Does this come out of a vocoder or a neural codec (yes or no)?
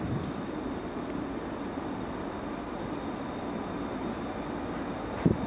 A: no